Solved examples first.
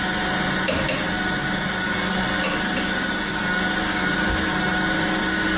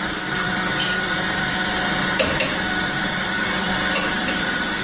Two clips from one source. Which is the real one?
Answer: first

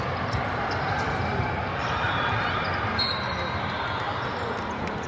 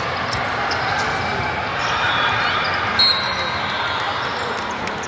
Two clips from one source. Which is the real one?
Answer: second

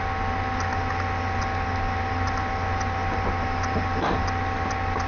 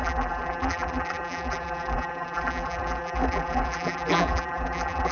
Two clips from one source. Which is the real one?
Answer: first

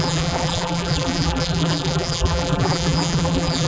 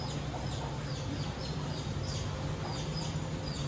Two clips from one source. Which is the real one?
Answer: second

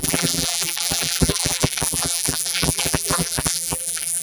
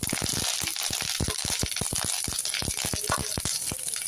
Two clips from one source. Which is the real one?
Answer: second